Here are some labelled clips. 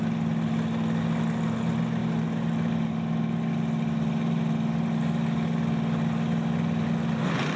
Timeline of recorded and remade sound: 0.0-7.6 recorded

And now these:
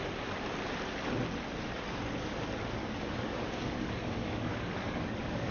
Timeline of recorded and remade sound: 0.0-2.8 recorded; 2.8-5.5 remade

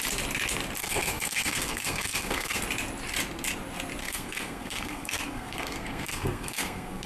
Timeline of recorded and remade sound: 0.0-0.8 recorded; 0.8-2.6 remade; 2.6-4.0 recorded; 4.0-7.1 remade

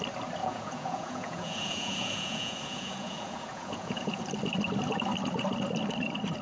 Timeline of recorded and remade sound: 0.0-0.4 recorded; 0.4-4.2 remade; 4.2-6.4 recorded